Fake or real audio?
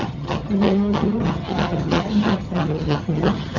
fake